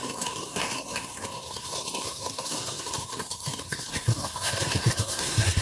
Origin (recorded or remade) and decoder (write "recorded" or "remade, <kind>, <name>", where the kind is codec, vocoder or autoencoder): remade, codec, SNAC